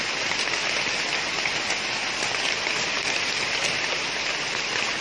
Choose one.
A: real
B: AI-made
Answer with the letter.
A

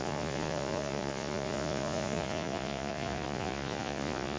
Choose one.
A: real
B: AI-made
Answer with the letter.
B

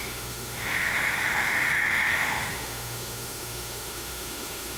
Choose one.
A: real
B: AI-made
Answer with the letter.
B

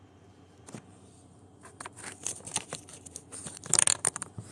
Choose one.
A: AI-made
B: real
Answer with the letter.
A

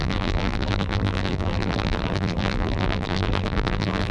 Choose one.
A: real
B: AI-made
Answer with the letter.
B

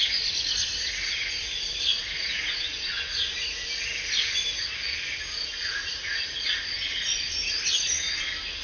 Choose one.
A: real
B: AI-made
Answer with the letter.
A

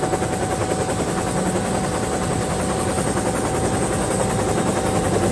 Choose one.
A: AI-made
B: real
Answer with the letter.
B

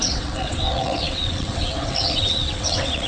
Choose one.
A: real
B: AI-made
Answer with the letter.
B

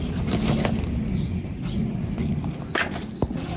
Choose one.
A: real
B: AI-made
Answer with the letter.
A